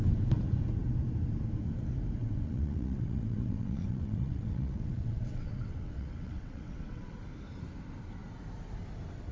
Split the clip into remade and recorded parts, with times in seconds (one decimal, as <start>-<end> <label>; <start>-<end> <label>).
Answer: 0.0-2.2 recorded; 2.2-7.2 remade; 7.2-9.3 recorded